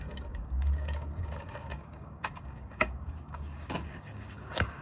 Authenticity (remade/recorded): remade